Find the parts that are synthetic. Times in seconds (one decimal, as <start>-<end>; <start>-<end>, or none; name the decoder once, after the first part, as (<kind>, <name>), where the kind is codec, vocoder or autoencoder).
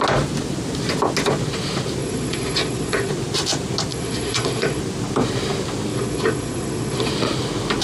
2.0-3.1 (vocoder, Vocos); 3.9-4.8; 5.9-7.1